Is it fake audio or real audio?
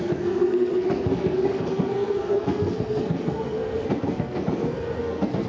fake